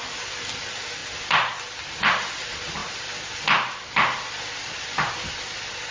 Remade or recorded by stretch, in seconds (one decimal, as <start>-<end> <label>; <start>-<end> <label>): 0.0-5.9 recorded